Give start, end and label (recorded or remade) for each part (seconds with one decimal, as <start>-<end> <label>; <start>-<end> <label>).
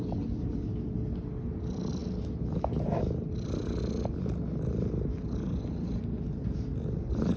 0.0-7.4 recorded